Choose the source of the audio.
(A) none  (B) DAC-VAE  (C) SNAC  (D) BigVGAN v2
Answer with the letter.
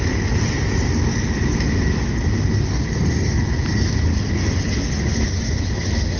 A